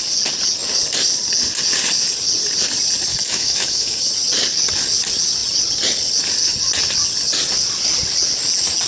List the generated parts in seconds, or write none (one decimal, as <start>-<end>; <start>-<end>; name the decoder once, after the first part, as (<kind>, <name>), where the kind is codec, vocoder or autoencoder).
3.1-4.1 (autoencoder, DAC-VAE)